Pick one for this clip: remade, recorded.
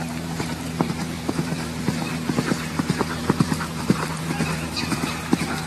remade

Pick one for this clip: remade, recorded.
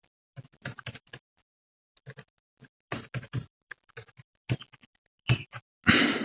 recorded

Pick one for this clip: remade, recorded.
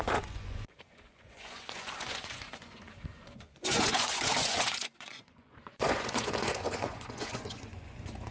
remade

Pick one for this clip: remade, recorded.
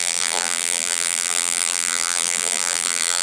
remade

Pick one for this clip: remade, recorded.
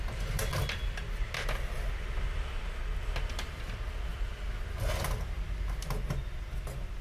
recorded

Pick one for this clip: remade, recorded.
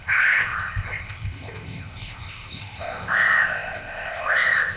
remade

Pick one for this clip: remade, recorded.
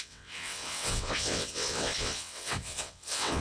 remade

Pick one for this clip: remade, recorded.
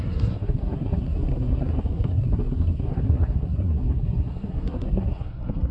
remade